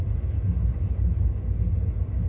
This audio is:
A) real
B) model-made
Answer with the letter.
A